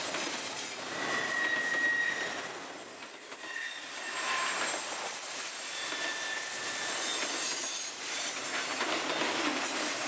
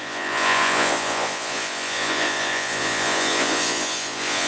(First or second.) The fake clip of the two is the second